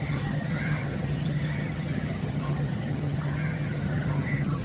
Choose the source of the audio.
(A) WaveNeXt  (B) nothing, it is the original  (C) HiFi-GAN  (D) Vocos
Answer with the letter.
C